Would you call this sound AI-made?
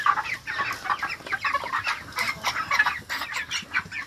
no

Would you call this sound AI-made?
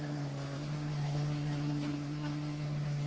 yes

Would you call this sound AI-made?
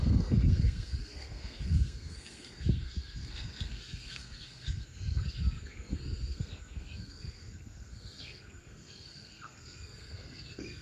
yes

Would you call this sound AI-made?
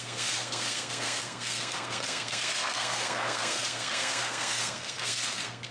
yes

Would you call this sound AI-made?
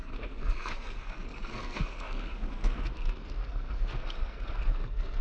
yes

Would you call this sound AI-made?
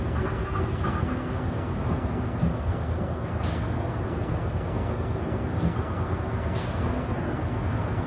yes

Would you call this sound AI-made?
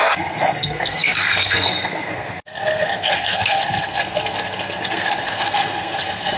yes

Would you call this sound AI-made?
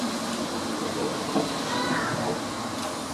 no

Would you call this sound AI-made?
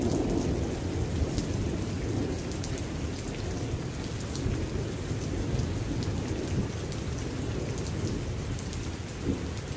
no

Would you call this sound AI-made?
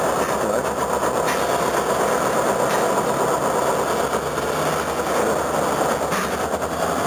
no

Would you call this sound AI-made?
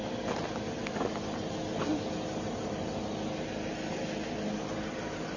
no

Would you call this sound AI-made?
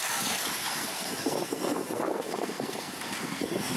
yes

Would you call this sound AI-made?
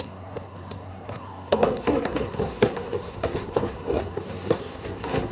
yes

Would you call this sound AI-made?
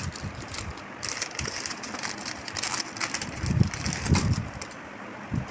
no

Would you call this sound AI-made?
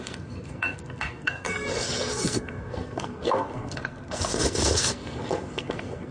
yes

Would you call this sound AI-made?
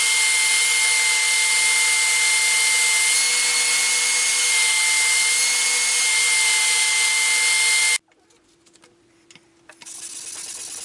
no